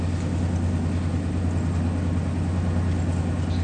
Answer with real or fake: real